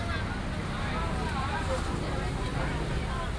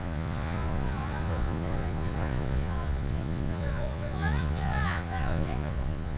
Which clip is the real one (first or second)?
first